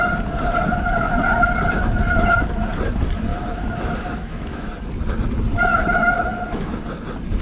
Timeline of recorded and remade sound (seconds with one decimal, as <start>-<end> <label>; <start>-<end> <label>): 0.0-3.3 recorded; 3.3-4.9 remade; 4.9-5.7 recorded; 5.7-6.7 remade; 6.7-7.4 recorded